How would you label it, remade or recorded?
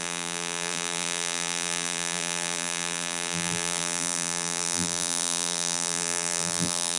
remade